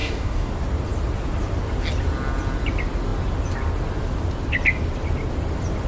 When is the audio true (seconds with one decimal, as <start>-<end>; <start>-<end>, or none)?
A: 0.5-5.9